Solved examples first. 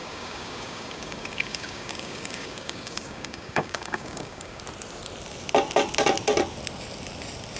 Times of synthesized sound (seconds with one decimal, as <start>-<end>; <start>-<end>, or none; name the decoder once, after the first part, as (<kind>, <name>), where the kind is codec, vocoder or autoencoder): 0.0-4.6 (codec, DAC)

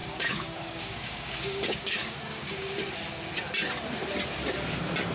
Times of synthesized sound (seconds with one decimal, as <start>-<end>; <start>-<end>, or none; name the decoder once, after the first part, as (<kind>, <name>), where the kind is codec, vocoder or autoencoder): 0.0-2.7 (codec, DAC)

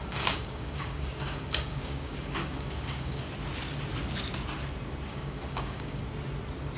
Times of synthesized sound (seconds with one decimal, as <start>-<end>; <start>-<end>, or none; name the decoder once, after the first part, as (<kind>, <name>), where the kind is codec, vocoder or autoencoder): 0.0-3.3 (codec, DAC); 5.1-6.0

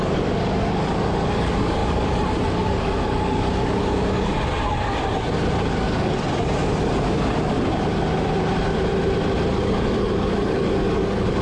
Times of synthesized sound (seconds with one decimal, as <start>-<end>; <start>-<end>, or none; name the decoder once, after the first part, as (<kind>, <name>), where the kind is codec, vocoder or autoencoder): 0.0-4.3 (codec, DAC); 9.6-11.4

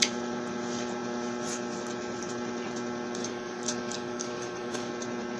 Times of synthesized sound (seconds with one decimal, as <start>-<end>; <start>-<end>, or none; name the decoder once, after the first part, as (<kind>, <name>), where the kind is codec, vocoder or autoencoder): 3.2-4.9 (codec, DAC)

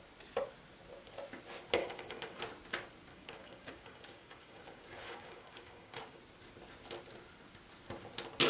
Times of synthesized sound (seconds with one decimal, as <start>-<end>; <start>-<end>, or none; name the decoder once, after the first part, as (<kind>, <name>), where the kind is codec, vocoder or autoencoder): 1.8-2.4 (codec, DAC); 3.1-6.2